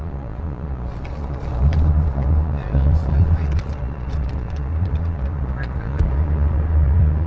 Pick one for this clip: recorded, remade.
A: remade